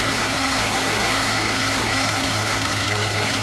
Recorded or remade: remade